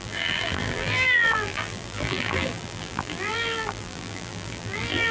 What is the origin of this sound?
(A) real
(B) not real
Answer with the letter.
B